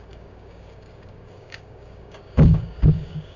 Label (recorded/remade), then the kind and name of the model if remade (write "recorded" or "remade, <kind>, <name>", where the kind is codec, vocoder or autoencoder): remade, codec, DAC